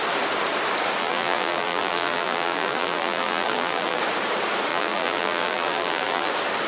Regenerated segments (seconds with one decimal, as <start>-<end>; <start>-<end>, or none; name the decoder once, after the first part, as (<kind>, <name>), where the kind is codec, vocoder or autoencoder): 1.0-4.0 (vocoder, BigVGAN v2); 4.7-6.3